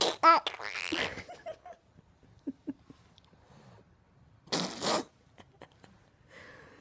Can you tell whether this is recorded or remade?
recorded